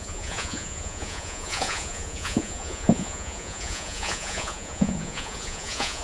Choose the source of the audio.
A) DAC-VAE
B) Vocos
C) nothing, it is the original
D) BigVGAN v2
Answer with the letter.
B